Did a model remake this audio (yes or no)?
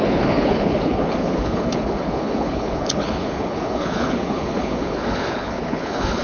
yes